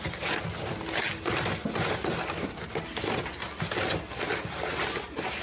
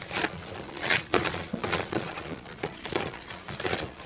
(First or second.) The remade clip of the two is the second